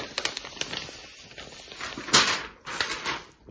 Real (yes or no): yes